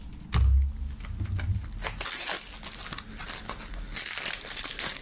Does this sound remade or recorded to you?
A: recorded